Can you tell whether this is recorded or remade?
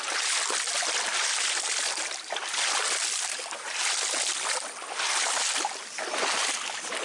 recorded